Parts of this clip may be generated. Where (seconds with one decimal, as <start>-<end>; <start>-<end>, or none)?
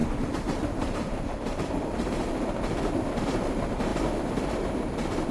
0.0-3.9; 4.5-5.3